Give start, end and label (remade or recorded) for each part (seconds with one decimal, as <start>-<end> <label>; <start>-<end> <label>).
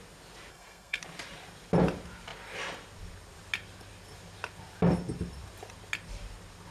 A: 0.0-0.5 recorded; 0.5-1.0 remade; 1.0-6.7 recorded